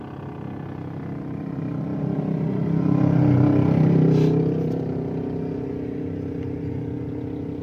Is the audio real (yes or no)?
yes